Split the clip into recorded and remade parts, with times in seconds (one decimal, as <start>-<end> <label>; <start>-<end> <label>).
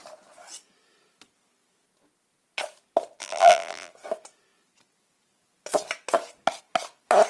0.0-3.2 recorded; 3.2-3.9 remade; 3.9-7.3 recorded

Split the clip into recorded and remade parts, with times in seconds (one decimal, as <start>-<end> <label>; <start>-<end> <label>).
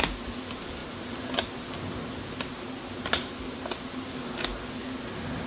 0.0-0.8 recorded; 0.8-4.1 remade; 4.1-5.5 recorded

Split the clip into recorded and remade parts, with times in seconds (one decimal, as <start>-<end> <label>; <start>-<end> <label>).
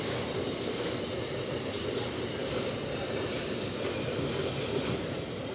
0.0-2.4 recorded; 2.4-4.2 remade; 4.2-5.5 recorded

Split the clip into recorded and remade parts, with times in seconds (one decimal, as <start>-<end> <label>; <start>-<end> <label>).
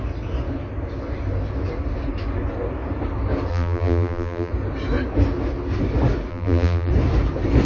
0.0-3.5 recorded; 3.5-4.5 remade; 4.5-6.3 recorded; 6.3-6.9 remade; 6.9-7.7 recorded